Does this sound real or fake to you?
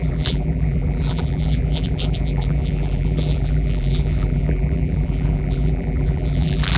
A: fake